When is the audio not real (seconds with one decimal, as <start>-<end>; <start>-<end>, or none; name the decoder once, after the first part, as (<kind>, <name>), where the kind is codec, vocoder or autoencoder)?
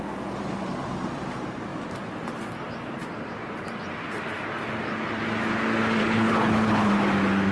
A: 6.0-6.9 (codec, HILCodec)